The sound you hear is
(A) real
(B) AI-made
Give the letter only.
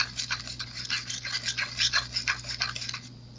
A